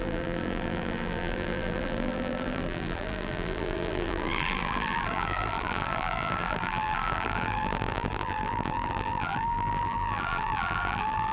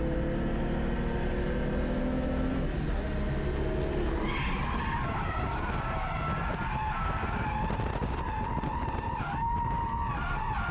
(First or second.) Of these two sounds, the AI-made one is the first